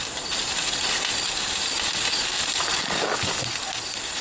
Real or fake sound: real